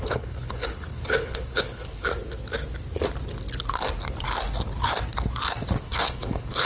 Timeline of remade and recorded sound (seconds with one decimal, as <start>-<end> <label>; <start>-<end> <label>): 0.0-2.1 remade; 2.1-5.8 recorded; 5.8-6.7 remade